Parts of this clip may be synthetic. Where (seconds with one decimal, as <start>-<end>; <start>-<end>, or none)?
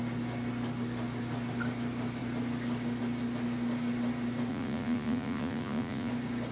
4.5-6.1